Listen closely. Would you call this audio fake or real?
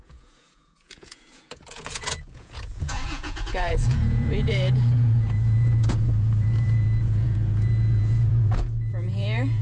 fake